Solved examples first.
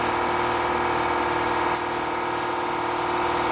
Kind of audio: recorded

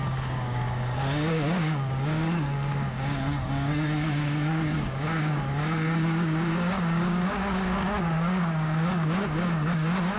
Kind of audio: remade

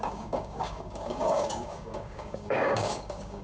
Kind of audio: remade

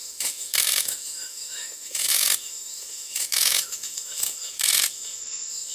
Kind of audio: remade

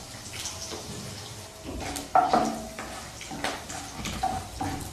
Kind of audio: recorded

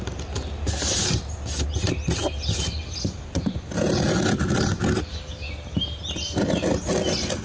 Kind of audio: recorded